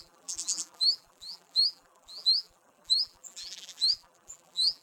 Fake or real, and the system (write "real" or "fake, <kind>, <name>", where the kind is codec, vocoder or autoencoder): fake, vocoder, BigVGAN v2